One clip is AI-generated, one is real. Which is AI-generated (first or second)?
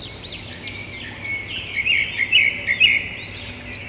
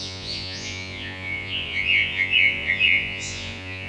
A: second